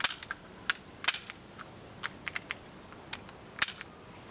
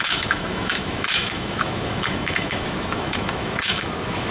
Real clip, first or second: first